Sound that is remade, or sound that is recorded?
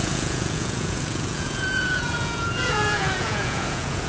remade